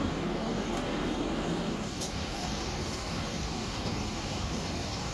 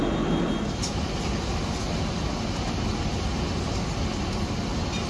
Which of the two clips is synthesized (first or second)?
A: first